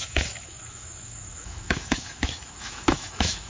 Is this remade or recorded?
remade